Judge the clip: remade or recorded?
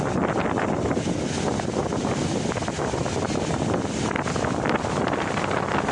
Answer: recorded